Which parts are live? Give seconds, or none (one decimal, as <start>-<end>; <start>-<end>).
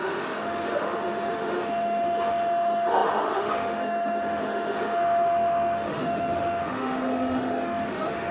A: none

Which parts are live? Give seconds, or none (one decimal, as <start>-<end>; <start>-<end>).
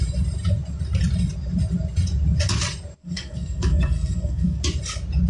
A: 0.0-3.0; 4.6-5.3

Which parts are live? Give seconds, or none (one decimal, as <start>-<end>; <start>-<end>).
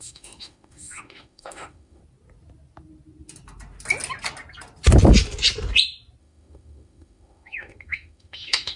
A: 2.0-6.2